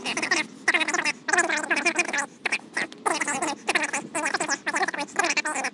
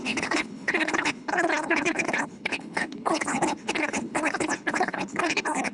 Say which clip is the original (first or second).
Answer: first